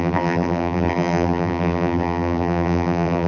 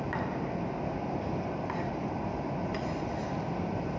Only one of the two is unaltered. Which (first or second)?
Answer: second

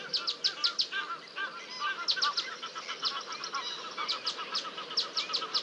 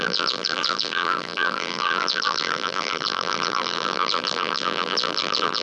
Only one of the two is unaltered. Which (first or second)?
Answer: first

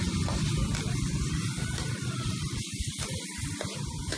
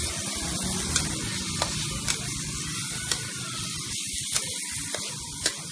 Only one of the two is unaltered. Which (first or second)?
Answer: second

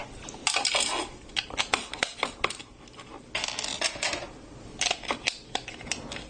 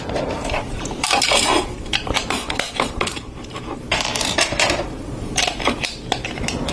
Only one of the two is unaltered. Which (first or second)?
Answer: first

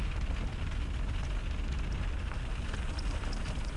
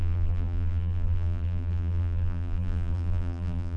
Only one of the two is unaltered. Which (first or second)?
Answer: first